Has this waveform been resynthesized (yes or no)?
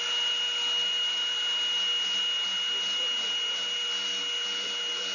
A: no